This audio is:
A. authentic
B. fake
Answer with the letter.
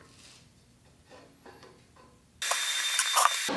A